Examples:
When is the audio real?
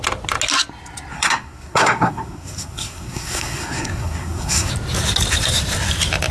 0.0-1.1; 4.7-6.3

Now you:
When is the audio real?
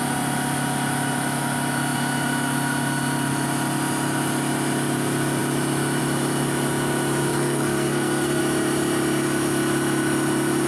0.0-7.3; 8.4-10.7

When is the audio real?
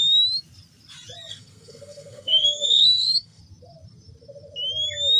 0.0-1.3; 3.4-5.2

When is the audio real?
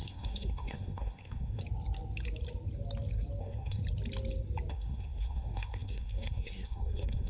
1.6-3.4; 3.8-4.7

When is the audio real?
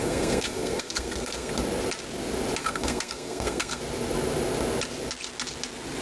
1.5-2.6; 3.8-6.0